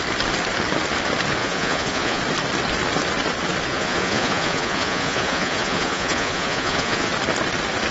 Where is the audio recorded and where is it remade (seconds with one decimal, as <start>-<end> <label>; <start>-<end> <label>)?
0.0-1.4 recorded; 1.4-2.2 remade; 2.2-3.7 recorded; 3.7-7.1 remade; 7.1-7.9 recorded